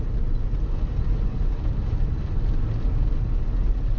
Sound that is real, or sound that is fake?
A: real